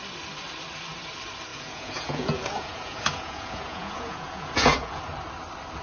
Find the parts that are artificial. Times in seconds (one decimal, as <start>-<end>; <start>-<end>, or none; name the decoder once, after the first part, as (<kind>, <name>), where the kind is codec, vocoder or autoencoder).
1.5-5.0 (vocoder, Vocos)